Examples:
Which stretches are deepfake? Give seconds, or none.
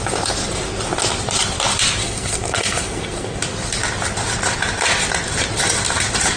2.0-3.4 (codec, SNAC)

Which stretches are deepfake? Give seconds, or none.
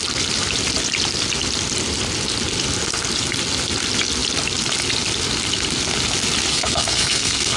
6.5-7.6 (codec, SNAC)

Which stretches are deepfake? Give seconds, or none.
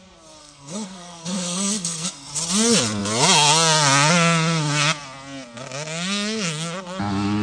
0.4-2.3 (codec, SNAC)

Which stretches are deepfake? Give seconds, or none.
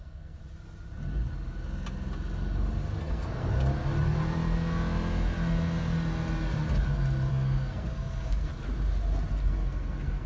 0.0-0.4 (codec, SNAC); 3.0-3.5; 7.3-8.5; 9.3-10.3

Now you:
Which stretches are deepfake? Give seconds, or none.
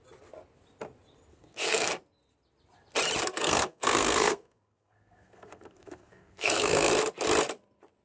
1.3-1.9 (codec, SNAC); 3.2-6.9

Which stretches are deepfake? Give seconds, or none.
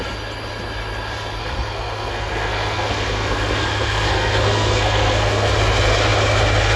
1.4-5.5 (codec, SNAC)